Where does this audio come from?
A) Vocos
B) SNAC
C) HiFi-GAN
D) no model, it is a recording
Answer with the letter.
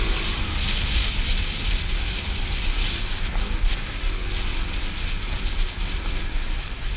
D